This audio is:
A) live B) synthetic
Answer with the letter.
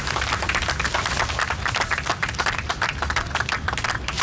A